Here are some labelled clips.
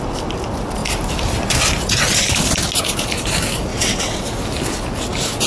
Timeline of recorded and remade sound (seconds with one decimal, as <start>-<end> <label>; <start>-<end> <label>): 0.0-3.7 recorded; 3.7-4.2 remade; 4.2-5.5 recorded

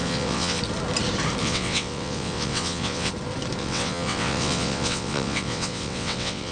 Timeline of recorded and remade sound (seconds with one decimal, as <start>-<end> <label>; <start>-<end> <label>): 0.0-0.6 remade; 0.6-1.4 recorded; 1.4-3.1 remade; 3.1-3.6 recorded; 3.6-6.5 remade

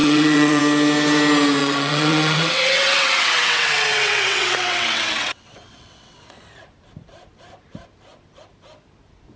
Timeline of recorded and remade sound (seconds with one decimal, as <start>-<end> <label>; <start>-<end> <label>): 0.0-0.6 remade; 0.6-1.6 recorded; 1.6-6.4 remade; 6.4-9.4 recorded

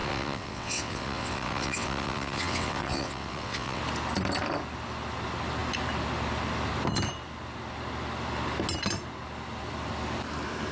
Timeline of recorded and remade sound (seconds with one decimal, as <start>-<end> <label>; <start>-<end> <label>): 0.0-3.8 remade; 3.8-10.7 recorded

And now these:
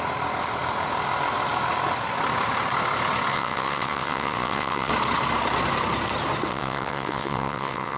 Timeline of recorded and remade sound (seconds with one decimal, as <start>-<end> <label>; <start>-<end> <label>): 0.0-3.3 recorded; 3.3-4.9 remade; 4.9-6.5 recorded; 6.5-8.0 remade

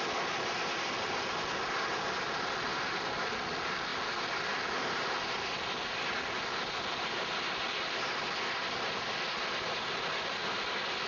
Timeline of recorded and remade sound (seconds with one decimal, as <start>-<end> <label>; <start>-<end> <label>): 0.0-11.1 recorded